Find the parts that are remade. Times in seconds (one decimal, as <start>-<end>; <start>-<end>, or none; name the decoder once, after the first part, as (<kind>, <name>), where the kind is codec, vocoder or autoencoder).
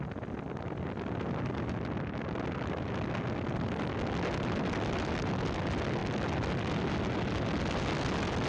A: none